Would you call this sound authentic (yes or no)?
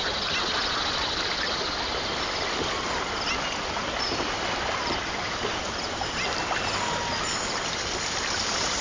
yes